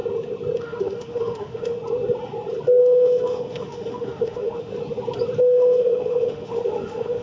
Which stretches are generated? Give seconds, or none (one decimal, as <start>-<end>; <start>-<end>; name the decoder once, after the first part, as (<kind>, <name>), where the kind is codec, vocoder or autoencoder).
0.6-1.8 (autoencoder, DAC-VAE); 2.8-4.7; 5.4-7.2